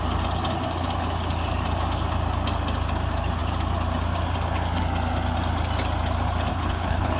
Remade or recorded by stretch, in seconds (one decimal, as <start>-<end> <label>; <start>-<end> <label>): 0.0-6.5 recorded; 6.5-7.2 remade